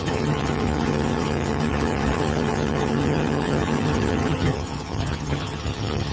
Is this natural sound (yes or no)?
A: no